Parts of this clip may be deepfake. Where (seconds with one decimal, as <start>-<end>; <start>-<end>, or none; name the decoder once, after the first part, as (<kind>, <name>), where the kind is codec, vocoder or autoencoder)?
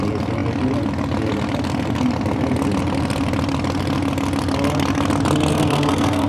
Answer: 5.5-6.3 (codec, SNAC)